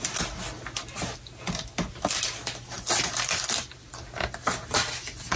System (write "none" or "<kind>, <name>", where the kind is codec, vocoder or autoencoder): none